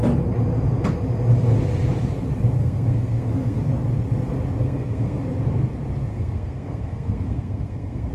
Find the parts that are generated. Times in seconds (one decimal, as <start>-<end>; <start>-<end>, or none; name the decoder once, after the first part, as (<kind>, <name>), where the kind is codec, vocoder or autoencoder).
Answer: 2.6-3.6 (codec, SNAC); 4.6-5.2; 6.1-8.1